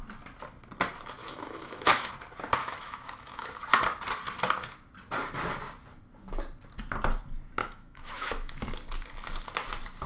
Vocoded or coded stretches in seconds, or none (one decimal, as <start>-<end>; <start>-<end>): 1.2-2.1; 2.6-3.6; 7.6-8.6